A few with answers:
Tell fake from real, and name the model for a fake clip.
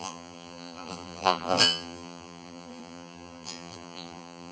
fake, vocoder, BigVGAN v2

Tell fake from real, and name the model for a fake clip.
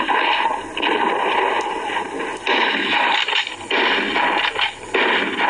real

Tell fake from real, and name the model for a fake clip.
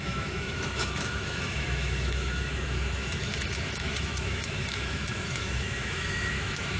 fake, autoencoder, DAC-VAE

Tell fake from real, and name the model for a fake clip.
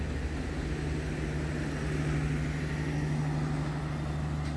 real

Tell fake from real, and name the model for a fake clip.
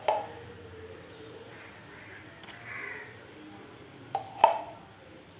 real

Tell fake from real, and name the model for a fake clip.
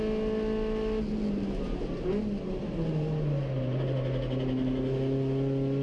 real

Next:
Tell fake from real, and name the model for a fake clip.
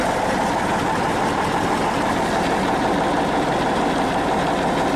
real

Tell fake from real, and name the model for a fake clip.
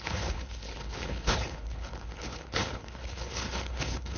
fake, codec, HILCodec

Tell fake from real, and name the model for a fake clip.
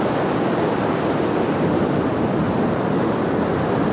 fake, vocoder, BigVGAN v2